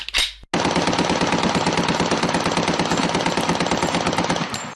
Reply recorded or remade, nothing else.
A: recorded